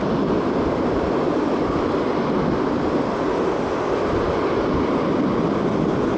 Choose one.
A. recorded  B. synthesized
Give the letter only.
A